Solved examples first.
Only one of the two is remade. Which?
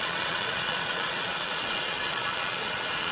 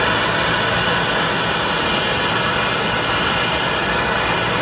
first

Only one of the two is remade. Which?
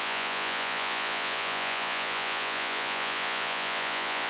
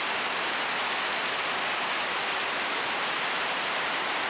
first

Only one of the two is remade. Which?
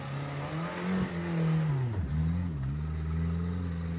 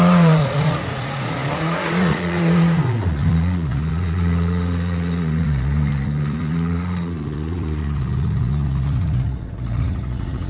second